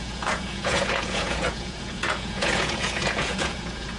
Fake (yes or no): yes